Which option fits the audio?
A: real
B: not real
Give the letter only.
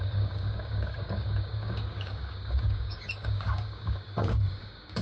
B